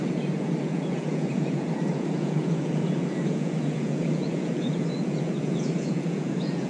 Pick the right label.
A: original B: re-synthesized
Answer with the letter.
B